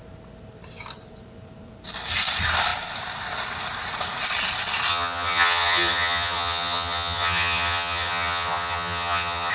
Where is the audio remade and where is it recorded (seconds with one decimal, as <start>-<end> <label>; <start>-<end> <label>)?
0.0-4.9 recorded; 4.9-9.5 remade